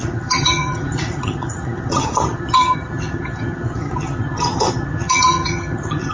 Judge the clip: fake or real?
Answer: fake